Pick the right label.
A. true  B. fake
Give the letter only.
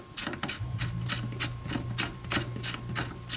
A